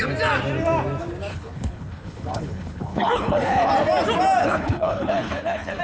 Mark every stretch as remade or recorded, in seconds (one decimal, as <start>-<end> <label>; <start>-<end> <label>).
0.0-1.3 recorded; 1.3-3.7 remade; 3.7-4.4 recorded; 4.4-5.8 remade